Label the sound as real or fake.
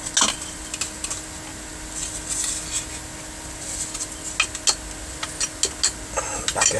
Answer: real